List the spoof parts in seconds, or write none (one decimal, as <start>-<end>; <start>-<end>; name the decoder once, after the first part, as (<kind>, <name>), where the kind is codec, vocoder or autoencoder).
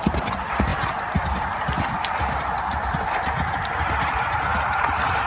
none